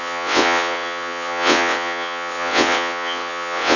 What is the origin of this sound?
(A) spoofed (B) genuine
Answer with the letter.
A